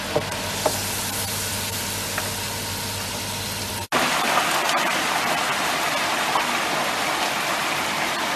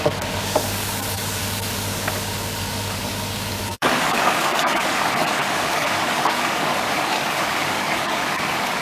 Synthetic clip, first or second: second